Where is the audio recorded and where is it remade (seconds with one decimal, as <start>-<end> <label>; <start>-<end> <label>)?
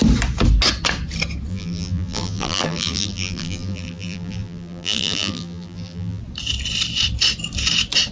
0.0-1.5 recorded; 1.5-6.2 remade; 6.2-8.1 recorded